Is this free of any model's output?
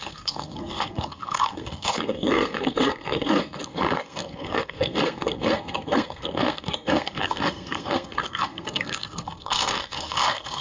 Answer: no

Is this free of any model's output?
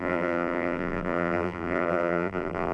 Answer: no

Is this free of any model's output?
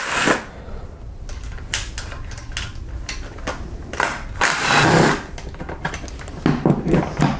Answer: yes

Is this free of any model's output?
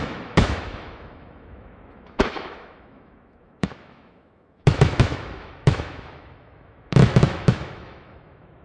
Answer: no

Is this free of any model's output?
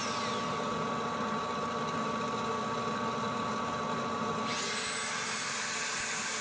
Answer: yes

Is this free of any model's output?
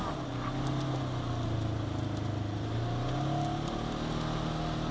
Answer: yes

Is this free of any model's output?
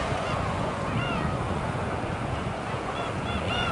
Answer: no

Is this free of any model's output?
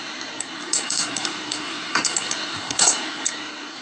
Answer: no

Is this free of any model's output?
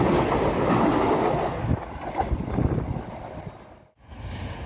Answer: yes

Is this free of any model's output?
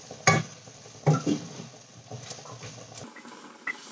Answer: yes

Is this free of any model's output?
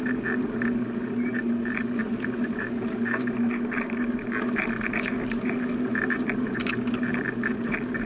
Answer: yes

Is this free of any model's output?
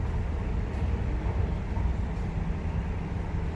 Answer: yes